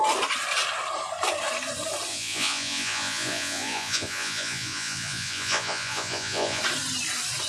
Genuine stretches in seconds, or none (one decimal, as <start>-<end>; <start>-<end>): 0.0-2.1; 6.6-7.5